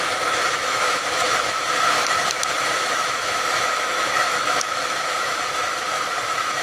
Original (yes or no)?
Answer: no